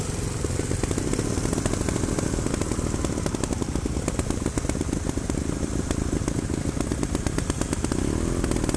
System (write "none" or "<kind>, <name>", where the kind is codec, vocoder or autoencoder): none